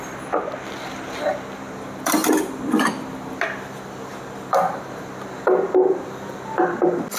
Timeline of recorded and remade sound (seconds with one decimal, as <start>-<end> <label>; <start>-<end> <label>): 0.0-7.2 recorded